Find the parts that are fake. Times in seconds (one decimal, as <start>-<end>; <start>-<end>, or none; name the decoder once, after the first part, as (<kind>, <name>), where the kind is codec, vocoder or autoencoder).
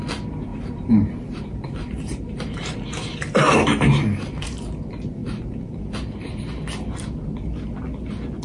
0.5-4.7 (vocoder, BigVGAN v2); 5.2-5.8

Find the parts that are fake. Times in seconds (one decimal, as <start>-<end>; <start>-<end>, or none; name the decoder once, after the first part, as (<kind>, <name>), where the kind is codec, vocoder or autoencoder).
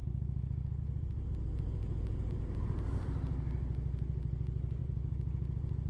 0.0-0.8 (vocoder, BigVGAN v2); 4.8-5.9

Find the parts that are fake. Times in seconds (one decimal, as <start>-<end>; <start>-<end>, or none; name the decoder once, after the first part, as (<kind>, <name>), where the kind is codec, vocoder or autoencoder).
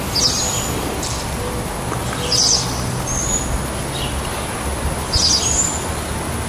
2.0-3.1 (vocoder, BigVGAN v2)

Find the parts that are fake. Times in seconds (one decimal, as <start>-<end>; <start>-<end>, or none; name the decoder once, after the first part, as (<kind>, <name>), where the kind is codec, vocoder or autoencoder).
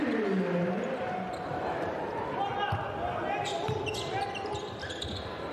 none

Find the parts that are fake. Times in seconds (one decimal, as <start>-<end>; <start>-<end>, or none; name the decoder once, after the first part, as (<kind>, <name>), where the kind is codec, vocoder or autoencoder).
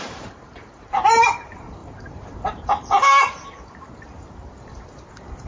0.0-5.5 (vocoder, BigVGAN v2)